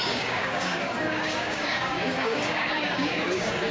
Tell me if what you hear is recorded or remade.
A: remade